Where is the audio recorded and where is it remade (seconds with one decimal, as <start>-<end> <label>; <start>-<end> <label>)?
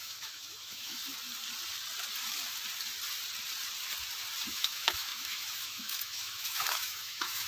0.0-1.0 remade; 1.0-4.5 recorded; 4.5-7.5 remade